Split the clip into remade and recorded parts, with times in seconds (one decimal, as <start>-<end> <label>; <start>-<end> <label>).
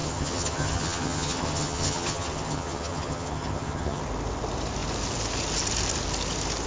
0.0-4.0 remade; 4.0-6.7 recorded